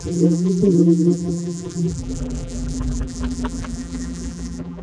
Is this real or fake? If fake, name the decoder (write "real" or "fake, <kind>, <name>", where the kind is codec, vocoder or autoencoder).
fake, vocoder, BigVGAN v2